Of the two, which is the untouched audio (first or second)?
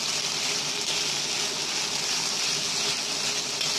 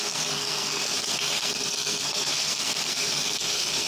first